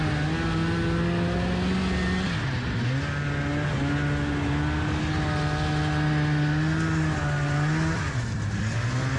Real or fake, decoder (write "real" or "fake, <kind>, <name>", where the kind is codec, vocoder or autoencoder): real